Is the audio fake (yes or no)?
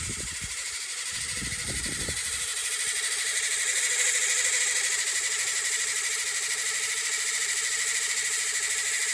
no